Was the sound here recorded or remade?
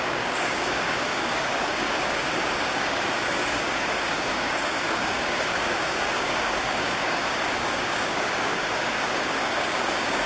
remade